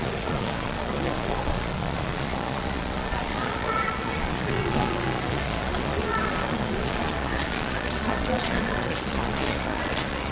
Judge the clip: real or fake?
fake